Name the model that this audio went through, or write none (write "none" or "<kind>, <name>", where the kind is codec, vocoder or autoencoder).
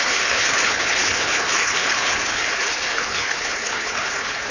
codec, HILCodec